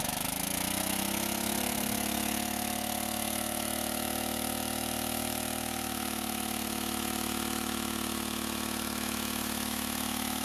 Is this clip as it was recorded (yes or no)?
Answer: no